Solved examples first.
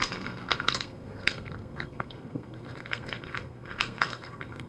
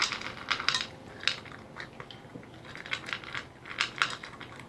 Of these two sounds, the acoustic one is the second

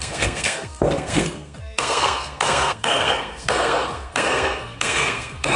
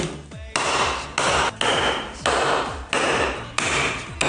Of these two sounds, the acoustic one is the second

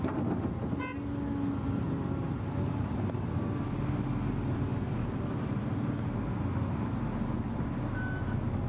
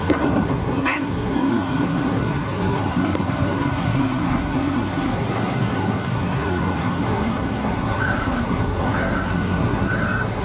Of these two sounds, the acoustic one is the first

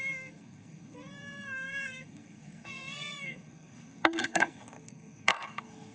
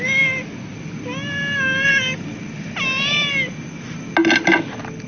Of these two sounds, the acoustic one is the second